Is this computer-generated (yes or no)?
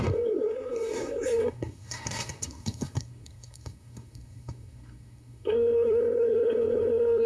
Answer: yes